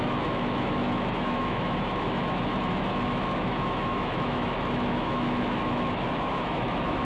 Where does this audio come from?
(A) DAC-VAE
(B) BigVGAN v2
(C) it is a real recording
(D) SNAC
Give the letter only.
A